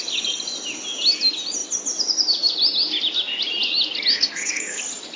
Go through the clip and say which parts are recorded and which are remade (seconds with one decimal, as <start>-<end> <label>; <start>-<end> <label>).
0.0-4.1 recorded; 4.1-4.8 remade; 4.8-5.2 recorded

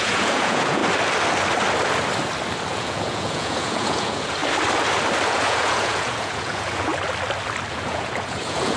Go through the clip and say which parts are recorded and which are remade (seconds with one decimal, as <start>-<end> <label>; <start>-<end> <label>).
0.0-0.8 remade; 0.8-2.7 recorded; 2.7-4.4 remade; 4.4-5.3 recorded; 5.3-6.9 remade; 6.9-7.7 recorded; 7.7-8.8 remade

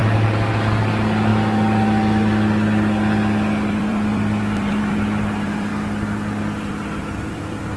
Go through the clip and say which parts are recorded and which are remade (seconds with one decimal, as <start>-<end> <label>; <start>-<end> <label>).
0.0-0.5 recorded; 0.5-1.3 remade; 1.3-3.7 recorded; 3.7-5.7 remade; 5.7-6.4 recorded; 6.4-7.8 remade

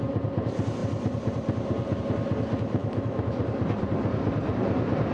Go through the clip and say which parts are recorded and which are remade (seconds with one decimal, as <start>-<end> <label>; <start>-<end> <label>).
0.0-2.8 recorded; 2.8-3.4 remade; 3.4-5.1 recorded

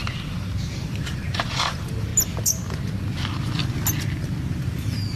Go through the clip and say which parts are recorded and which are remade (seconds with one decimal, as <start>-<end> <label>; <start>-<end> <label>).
0.0-2.1 remade; 2.1-4.0 recorded; 4.0-5.2 remade

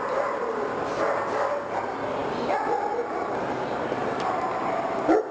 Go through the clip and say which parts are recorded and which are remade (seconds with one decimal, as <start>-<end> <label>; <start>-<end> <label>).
0.0-5.3 recorded

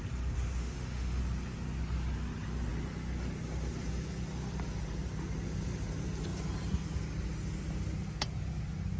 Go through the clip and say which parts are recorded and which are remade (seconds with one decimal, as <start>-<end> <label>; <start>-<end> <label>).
0.0-0.6 recorded; 0.6-1.2 remade; 1.2-9.0 recorded